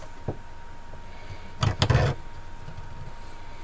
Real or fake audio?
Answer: real